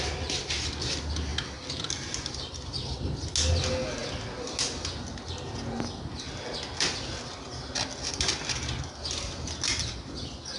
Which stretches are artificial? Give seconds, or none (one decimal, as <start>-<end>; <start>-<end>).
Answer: none